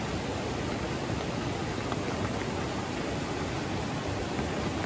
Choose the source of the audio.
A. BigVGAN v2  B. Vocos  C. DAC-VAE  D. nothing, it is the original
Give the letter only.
D